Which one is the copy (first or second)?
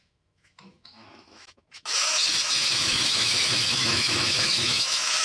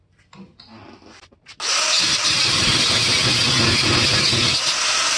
first